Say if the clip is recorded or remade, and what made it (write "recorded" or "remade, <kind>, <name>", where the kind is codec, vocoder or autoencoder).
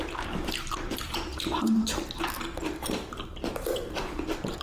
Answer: remade, vocoder, BigVGAN v2